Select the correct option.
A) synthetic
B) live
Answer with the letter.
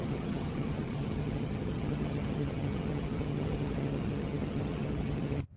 A